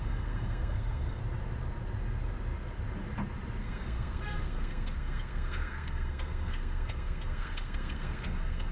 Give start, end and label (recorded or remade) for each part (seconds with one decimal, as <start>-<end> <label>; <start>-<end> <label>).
0.0-1.2 remade; 1.2-3.6 recorded; 3.6-8.7 remade